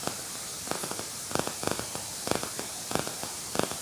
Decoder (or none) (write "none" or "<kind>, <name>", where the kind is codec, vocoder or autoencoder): vocoder, BigVGAN v2